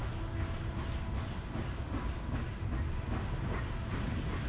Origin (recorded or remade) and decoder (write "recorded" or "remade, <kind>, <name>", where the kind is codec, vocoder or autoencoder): recorded